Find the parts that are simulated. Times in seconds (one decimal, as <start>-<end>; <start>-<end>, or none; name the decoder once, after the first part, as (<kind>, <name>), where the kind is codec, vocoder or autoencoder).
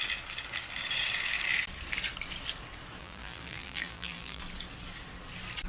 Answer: 3.0-4.4 (vocoder, BigVGAN v2)